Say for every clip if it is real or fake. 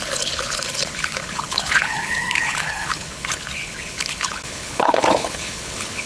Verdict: fake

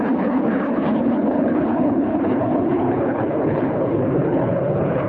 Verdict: fake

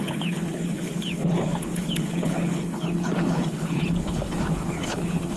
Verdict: fake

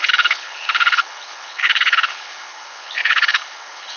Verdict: fake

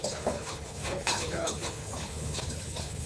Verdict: fake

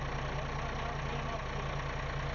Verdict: real